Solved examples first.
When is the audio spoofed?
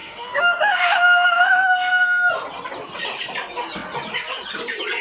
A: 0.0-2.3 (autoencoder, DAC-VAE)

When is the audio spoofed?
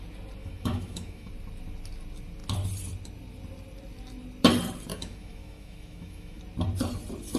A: 0.4-1.3 (autoencoder, DAC-VAE); 4.9-6.4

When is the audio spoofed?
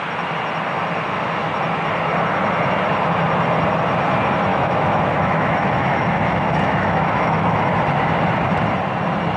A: 4.5-7.6 (autoencoder, DAC-VAE)